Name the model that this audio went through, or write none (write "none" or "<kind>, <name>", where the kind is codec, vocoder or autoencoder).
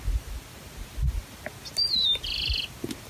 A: none